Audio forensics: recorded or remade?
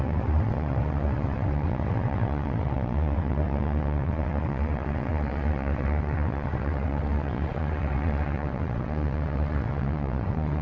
remade